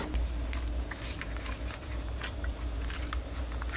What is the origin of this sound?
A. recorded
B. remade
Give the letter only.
A